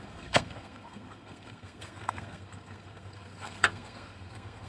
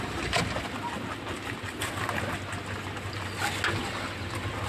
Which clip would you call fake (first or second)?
first